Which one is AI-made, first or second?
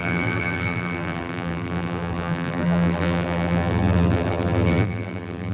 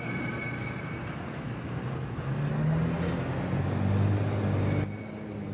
first